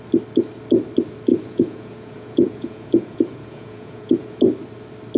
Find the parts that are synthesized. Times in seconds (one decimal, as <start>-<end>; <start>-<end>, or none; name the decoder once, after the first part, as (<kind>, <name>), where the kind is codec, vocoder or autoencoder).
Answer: 1.3-4.4 (vocoder, Vocos)